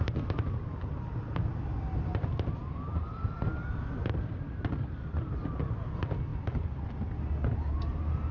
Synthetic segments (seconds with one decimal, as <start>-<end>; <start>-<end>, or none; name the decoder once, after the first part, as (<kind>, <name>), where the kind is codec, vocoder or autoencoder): 2.6-5.6 (vocoder, BigVGAN v2)